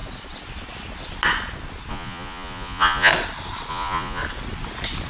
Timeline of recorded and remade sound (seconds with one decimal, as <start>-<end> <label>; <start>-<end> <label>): 0.0-1.9 recorded; 1.9-3.1 remade; 3.1-3.7 recorded; 3.7-4.2 remade; 4.2-5.1 recorded